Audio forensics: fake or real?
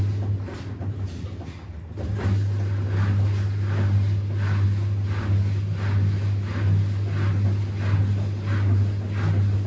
real